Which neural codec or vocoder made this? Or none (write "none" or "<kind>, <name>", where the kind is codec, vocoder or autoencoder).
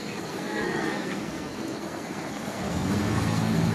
codec, SNAC